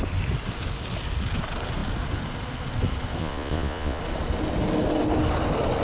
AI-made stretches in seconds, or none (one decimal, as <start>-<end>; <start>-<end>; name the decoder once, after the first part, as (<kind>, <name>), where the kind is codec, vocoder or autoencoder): 3.2-4.0 (vocoder, Vocos)